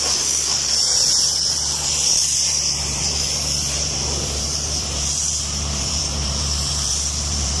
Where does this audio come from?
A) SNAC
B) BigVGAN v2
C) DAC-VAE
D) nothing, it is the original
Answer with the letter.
B